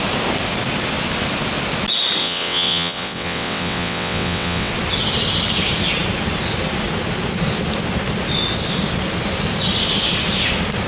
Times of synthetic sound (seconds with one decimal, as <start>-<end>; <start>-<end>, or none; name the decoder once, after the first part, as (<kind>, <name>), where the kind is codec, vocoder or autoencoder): 2.2-4.7 (vocoder, WaveNeXt)